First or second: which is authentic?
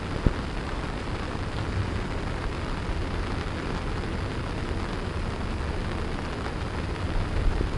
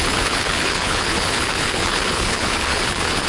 first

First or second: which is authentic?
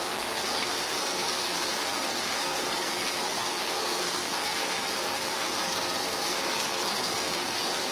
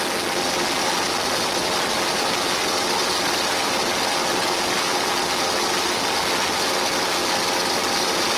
second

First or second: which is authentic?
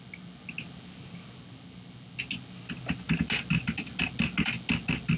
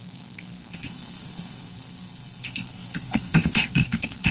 first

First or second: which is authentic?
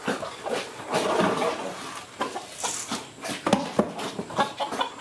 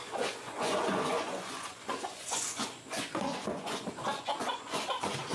first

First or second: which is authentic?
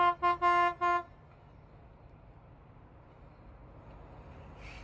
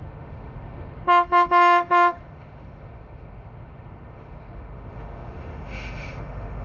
first